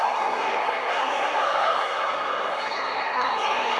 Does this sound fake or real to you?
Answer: fake